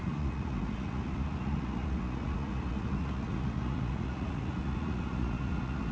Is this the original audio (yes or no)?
no